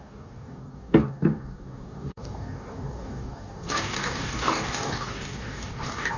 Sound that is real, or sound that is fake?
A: fake